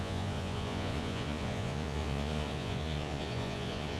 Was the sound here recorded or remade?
remade